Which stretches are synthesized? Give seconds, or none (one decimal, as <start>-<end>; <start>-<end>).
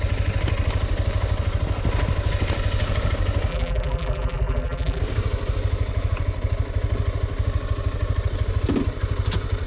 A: 3.5-5.0